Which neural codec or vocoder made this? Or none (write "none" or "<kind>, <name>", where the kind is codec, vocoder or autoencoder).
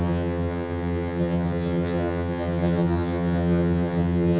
vocoder, HiFi-GAN